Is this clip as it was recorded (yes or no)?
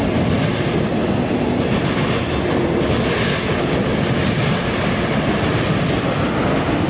yes